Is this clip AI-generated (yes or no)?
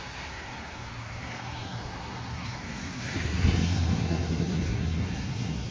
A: yes